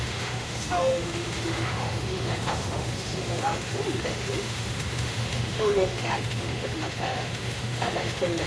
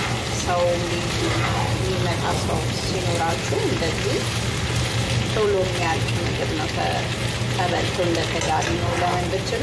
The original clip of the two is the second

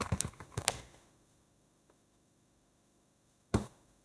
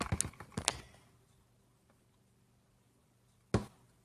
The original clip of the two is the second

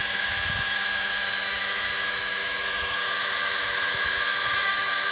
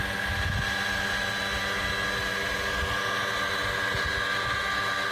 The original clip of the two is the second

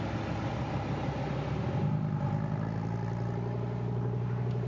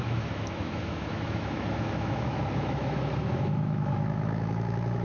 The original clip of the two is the first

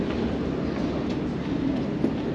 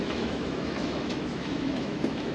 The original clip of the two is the first